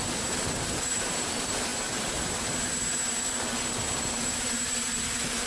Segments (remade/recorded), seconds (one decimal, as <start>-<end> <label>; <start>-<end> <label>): 0.0-1.7 remade; 1.7-4.0 recorded; 4.0-5.5 remade